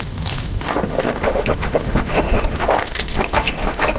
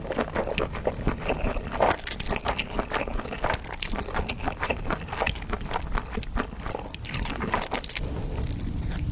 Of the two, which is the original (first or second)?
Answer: second